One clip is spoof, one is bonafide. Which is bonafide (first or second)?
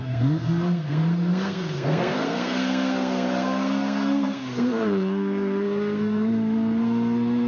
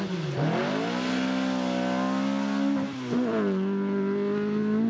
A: second